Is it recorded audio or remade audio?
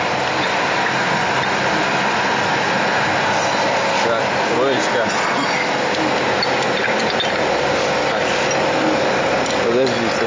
recorded